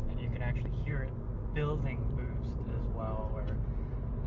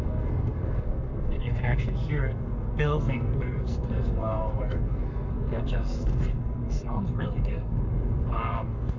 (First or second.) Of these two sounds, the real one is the first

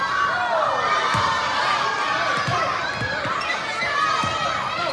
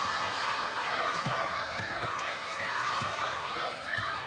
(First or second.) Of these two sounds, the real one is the first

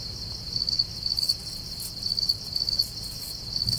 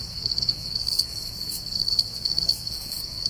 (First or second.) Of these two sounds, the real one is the first